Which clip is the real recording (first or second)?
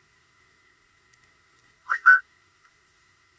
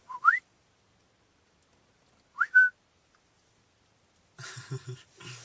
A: second